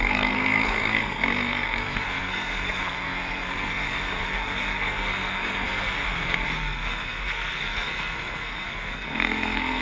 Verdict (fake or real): fake